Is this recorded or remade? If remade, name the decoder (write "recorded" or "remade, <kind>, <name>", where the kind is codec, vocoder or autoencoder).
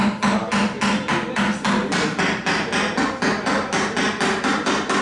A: recorded